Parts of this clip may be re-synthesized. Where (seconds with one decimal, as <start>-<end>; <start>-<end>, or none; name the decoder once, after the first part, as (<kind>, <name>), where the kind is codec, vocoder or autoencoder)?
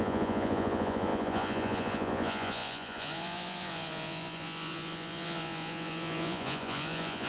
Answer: 0.0-7.3 (vocoder, Vocos)